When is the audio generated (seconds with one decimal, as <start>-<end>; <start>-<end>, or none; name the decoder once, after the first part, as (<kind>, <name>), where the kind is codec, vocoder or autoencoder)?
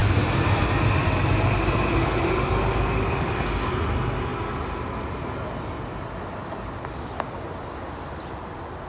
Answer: none